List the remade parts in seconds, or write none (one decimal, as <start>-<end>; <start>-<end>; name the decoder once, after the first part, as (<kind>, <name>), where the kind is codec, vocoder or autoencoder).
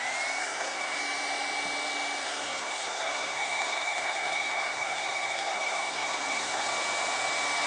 0.4-1.0 (codec, SNAC); 2.2-6.7